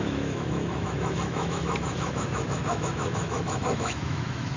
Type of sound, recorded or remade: remade